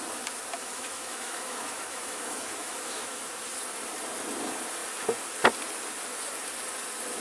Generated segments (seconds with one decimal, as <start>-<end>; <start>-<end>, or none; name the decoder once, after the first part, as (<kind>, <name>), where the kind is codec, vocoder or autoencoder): 0.6-3.2 (autoencoder, DAC-VAE)